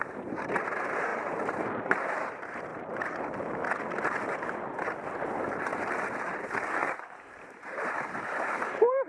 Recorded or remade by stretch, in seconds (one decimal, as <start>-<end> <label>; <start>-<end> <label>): 0.0-2.7 remade; 2.7-7.8 recorded; 7.8-9.1 remade